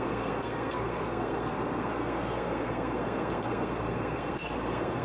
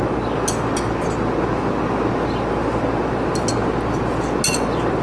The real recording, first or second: second